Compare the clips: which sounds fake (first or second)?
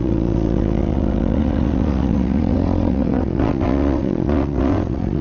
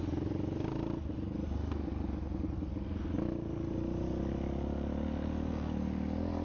first